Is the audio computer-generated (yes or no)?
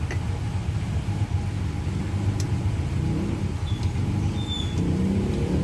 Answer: no